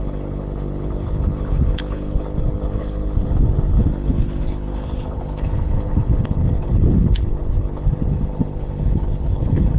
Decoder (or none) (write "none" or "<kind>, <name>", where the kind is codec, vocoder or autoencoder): codec, HILCodec